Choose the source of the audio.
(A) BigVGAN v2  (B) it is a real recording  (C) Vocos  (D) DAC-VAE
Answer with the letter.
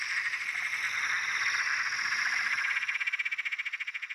A